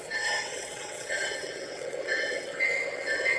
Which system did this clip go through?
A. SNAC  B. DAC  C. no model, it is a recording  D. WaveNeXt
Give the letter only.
D